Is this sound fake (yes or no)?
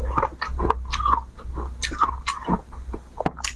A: no